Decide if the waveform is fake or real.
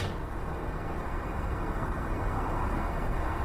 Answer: fake